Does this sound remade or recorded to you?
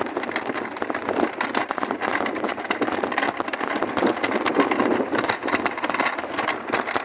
recorded